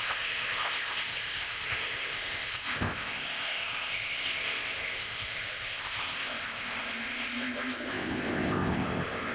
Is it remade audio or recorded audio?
remade